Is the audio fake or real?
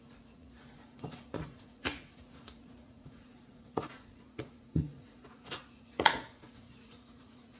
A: fake